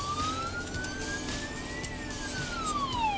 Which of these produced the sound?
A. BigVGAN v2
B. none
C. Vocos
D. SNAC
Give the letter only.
B